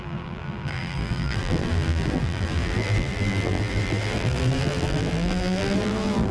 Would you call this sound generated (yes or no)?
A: yes